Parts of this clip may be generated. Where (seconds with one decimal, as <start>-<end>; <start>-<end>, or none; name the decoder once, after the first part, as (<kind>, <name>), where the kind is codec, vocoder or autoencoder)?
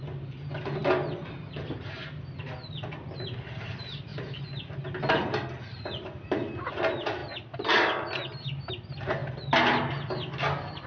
none